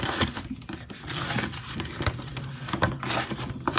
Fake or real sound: real